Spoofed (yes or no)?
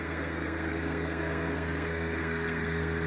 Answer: yes